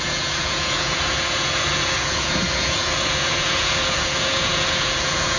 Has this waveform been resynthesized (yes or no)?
yes